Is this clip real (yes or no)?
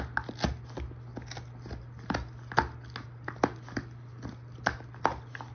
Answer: yes